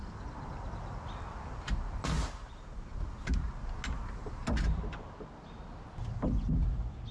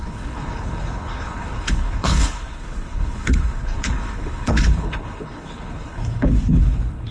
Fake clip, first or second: second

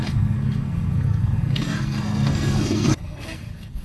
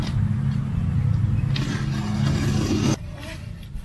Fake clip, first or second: first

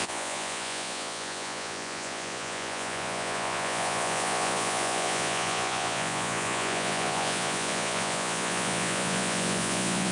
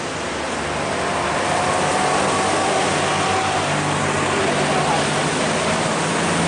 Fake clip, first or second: first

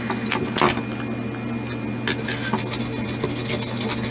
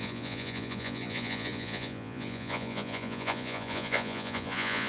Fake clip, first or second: second